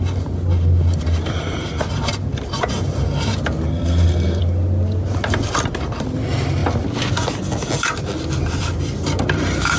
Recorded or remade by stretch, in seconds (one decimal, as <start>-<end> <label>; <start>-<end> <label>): 0.0-3.7 recorded; 3.7-4.4 remade; 4.4-9.8 recorded